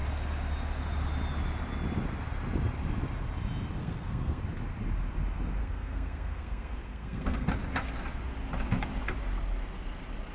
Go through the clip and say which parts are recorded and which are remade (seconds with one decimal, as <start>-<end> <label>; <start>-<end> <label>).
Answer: 0.0-3.8 recorded; 3.8-4.4 remade; 4.4-5.6 recorded; 5.6-7.5 remade; 7.5-10.3 recorded